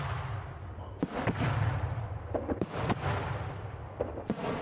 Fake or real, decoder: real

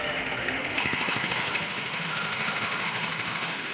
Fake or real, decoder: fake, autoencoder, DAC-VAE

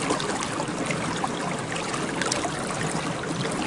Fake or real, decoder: real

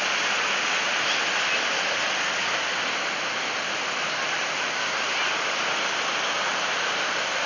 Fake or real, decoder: real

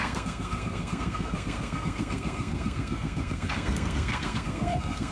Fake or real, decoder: fake, codec, SNAC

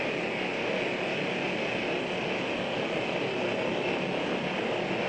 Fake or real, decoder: real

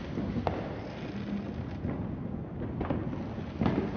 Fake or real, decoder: real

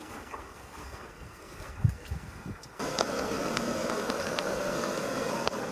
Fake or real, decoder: fake, codec, SNAC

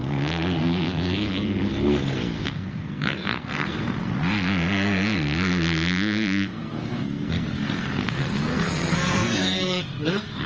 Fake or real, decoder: fake, codec, SNAC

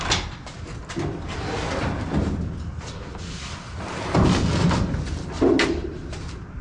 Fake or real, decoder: real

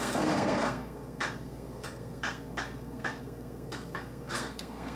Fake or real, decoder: fake, codec, SNAC